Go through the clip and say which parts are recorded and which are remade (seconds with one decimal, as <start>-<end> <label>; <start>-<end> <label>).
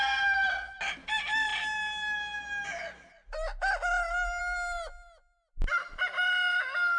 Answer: 0.0-7.0 recorded